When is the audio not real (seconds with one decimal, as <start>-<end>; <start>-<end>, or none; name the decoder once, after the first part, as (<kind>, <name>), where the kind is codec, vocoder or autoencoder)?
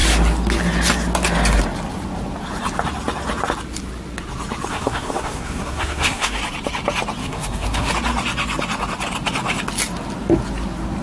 4.7-6.4 (codec, SNAC); 7.2-7.9